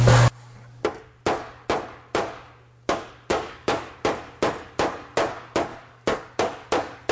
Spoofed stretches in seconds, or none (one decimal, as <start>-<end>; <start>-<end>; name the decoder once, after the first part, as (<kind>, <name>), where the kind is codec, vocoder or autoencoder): 3.3-3.9 (codec, DAC); 5.7-6.2